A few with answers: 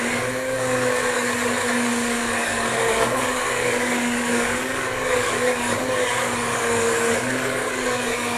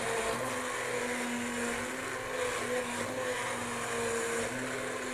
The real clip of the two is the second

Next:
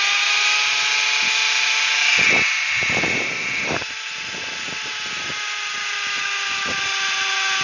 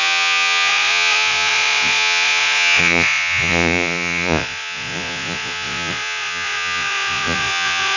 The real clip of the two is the first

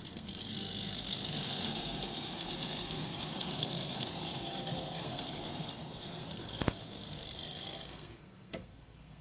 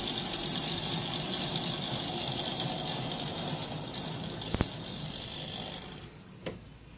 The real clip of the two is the second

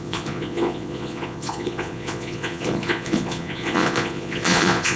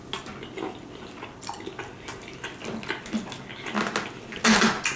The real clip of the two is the second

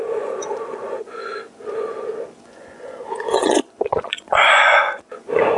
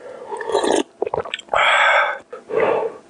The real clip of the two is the second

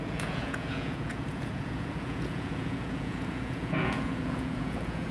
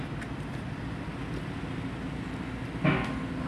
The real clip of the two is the second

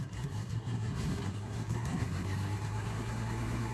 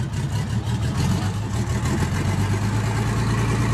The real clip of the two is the second